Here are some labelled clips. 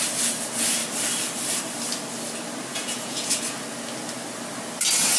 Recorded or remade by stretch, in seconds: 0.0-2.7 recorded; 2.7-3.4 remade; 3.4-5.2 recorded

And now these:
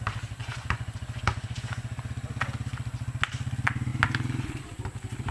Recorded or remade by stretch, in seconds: 0.0-0.4 recorded; 0.4-2.1 remade; 2.1-5.3 recorded

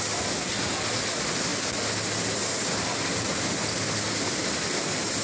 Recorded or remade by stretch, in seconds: 0.0-5.2 recorded